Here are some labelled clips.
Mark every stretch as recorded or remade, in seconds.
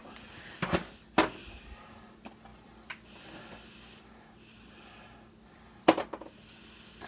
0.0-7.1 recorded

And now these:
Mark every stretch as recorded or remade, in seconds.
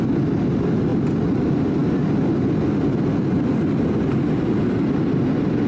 0.0-5.7 recorded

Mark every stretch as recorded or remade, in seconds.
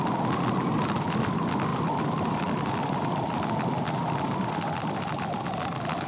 0.0-1.7 recorded; 1.7-5.4 remade; 5.4-6.1 recorded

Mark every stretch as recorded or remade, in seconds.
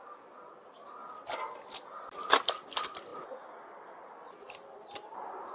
0.0-5.5 recorded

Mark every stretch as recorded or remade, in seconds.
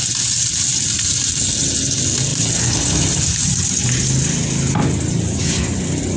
0.0-6.2 recorded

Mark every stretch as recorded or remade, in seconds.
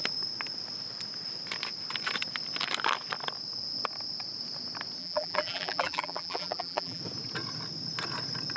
0.0-5.0 recorded; 5.0-7.0 remade; 7.0-8.6 recorded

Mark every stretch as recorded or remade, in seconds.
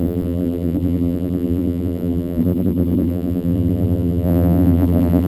0.0-5.3 remade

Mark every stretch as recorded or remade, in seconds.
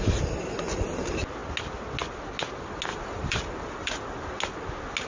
0.0-2.9 recorded; 2.9-4.4 remade; 4.4-5.1 recorded